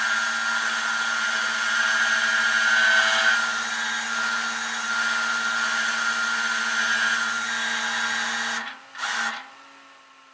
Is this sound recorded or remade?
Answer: recorded